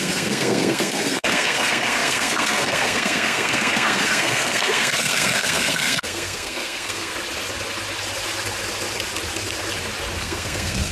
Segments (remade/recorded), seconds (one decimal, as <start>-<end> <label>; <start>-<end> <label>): 0.0-7.1 remade; 7.1-10.2 recorded; 10.2-10.9 remade